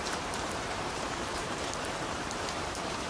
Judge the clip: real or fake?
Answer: fake